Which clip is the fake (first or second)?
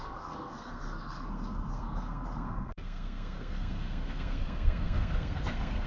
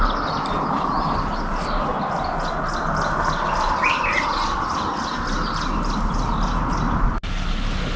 first